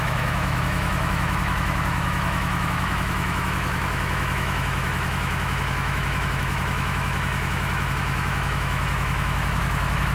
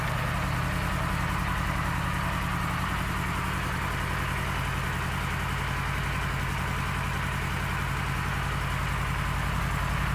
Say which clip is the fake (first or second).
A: first